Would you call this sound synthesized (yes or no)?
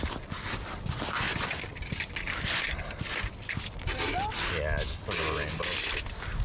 no